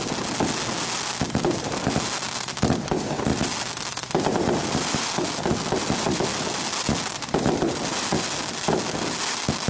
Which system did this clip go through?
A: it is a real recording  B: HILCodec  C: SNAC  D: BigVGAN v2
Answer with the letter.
A